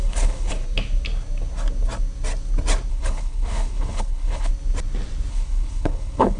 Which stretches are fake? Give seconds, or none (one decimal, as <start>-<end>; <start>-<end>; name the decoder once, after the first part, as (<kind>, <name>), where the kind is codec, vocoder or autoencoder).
0.0-0.5 (codec, HILCodec); 2.9-4.5; 5.3-6.4